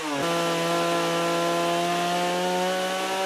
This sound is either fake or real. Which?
real